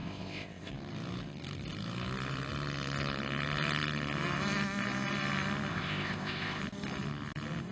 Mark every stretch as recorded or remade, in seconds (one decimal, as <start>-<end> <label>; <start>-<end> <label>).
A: 0.0-0.7 remade; 0.7-5.7 recorded; 5.7-6.6 remade; 6.6-7.7 recorded